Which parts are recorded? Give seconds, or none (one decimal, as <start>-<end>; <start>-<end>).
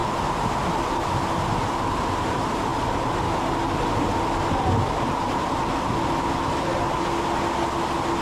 0.0-8.2